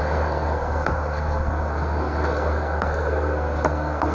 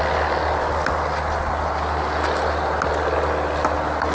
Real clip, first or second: second